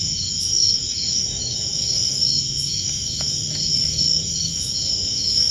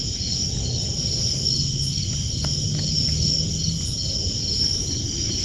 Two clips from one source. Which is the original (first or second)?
second